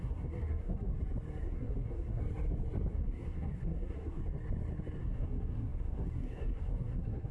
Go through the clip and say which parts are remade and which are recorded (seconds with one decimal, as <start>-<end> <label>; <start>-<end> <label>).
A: 0.0-0.9 remade; 0.9-1.4 recorded; 1.4-2.2 remade; 2.2-2.9 recorded; 2.9-4.2 remade; 4.2-5.0 recorded; 5.0-7.3 remade